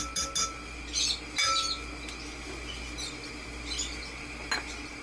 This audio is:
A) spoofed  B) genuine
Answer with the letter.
B